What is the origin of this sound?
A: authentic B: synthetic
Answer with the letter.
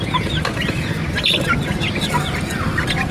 A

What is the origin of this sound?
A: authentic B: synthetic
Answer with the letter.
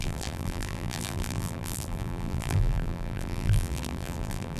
B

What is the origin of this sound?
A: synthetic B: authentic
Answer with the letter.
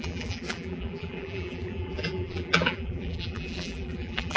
A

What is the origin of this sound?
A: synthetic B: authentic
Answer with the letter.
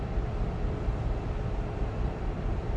A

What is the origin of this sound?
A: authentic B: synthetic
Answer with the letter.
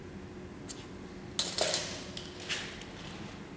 A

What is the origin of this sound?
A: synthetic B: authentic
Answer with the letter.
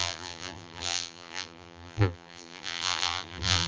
A